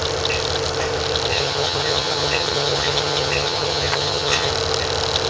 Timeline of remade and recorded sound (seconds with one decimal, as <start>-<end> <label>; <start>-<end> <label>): 0.0-1.3 recorded; 1.3-4.5 remade; 4.5-5.3 recorded